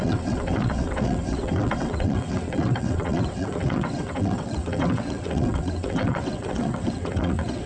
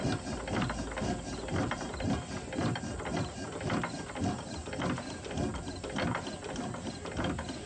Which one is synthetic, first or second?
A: first